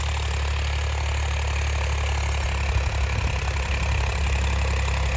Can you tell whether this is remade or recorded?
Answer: recorded